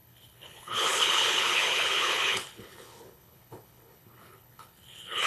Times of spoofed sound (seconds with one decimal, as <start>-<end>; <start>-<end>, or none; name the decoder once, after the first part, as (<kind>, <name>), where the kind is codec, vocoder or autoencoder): 0.0-5.3 (codec, HILCodec)